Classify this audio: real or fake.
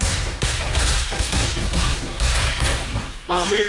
fake